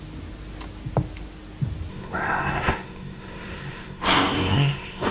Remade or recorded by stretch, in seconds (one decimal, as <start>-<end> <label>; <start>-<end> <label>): 0.0-1.9 recorded; 1.9-5.1 remade